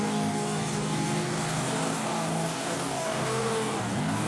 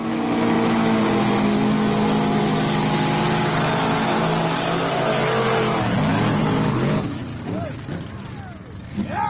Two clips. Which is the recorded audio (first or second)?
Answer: second